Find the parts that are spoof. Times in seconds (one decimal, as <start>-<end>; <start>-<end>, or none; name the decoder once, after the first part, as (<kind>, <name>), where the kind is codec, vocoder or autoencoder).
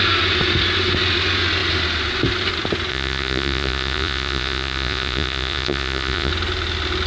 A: 2.9-6.3 (vocoder, Vocos)